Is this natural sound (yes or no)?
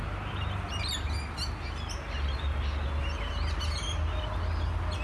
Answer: yes